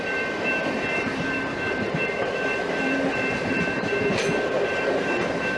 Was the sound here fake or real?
fake